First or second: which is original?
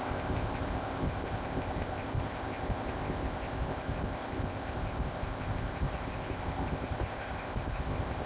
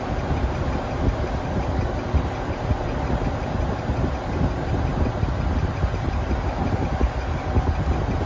second